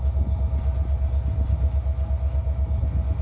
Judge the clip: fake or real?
real